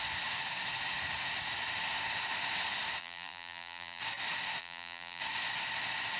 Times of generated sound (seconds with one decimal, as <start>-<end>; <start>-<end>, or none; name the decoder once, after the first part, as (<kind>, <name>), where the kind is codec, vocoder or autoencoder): 3.0-4.0 (vocoder, BigVGAN v2); 4.6-5.2